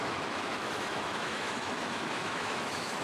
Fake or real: fake